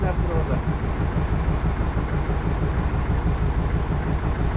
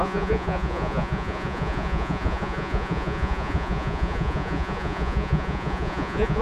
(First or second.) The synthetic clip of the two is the second